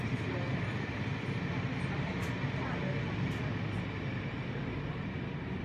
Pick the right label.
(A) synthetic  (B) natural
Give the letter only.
B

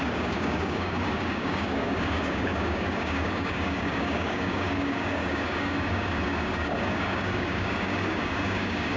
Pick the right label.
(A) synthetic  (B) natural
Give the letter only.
A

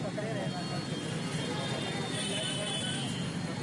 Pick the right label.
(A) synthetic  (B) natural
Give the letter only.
B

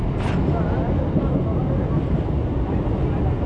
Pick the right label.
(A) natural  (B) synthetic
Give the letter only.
A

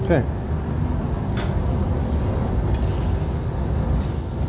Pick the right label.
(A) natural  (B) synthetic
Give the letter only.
A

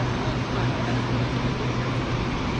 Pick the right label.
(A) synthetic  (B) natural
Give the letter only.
B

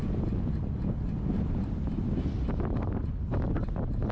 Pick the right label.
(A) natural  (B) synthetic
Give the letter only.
A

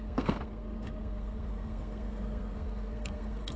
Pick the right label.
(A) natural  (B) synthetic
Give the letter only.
B